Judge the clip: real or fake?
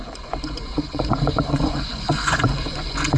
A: fake